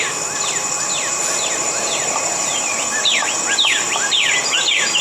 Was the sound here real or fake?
fake